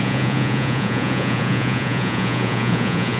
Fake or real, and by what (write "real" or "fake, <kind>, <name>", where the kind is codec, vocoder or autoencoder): fake, vocoder, Vocos